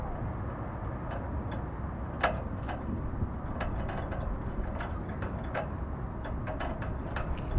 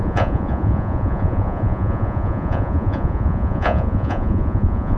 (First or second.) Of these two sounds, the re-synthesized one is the second